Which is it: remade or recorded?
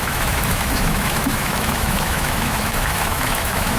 remade